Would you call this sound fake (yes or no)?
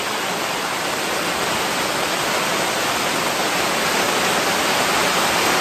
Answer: no